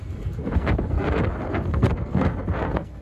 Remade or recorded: remade